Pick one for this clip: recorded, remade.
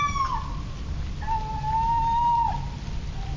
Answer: recorded